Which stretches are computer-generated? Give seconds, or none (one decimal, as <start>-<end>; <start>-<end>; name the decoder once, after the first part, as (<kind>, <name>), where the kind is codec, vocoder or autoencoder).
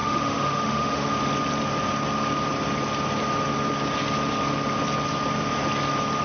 0.0-1.1 (autoencoder, DAC-VAE)